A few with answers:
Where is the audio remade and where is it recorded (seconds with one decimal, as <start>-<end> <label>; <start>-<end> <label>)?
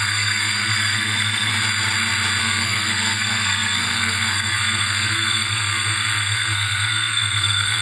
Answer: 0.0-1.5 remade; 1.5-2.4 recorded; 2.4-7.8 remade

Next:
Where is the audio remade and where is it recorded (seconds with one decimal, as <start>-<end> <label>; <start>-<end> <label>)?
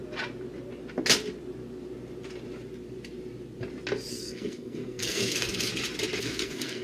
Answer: 0.0-4.1 recorded; 4.1-5.7 remade; 5.7-6.2 recorded; 6.2-6.8 remade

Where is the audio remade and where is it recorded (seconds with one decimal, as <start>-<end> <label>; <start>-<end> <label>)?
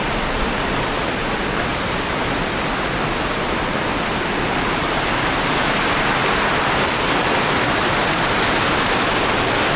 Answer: 0.0-6.2 remade; 6.2-6.8 recorded; 6.8-8.0 remade; 8.0-9.8 recorded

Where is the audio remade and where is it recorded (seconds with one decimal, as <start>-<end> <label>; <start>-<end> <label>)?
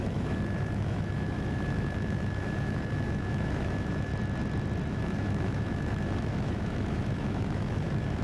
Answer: 0.0-4.1 remade; 4.1-4.9 recorded; 4.9-8.2 remade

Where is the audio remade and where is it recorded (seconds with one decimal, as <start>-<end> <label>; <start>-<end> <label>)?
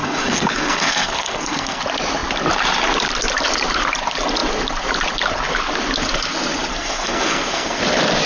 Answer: 0.0-1.8 remade; 1.8-6.7 recorded; 6.7-7.8 remade; 7.8-8.3 recorded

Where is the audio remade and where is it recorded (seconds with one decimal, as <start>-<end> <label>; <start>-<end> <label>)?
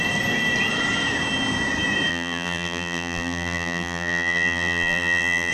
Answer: 0.0-2.1 recorded; 2.1-5.5 remade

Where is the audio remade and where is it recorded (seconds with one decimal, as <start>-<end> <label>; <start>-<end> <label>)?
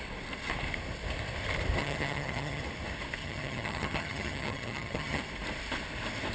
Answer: 0.0-1.8 recorded; 1.8-2.6 remade; 2.6-3.2 recorded; 3.2-5.2 remade; 5.2-6.3 recorded